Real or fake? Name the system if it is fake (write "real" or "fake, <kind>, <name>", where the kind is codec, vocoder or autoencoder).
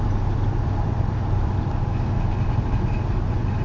real